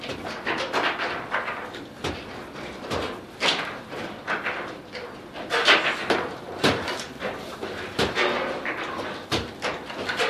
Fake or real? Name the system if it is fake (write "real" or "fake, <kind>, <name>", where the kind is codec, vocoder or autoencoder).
real